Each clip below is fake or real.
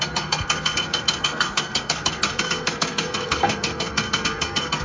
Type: fake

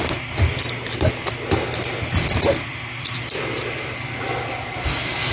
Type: real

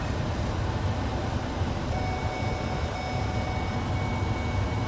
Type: real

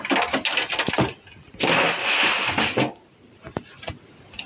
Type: real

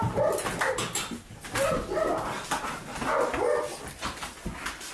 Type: real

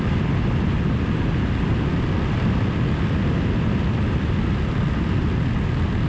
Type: real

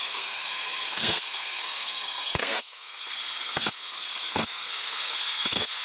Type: fake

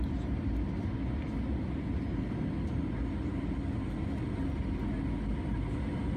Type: real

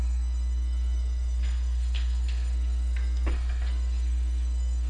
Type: fake